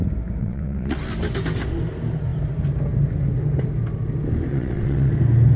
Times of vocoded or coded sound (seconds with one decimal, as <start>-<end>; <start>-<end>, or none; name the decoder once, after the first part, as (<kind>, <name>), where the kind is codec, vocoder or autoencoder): 0.4-1.1 (vocoder, WaveNeXt); 4.5-5.1